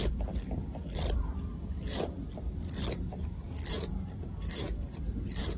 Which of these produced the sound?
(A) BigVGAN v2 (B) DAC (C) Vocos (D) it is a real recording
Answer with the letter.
A